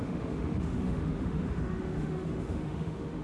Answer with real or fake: fake